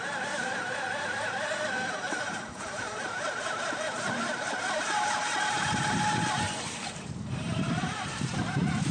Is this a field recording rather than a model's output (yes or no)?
no